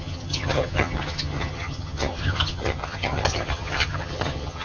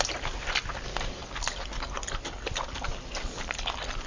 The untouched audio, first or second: second